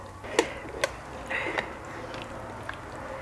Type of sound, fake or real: real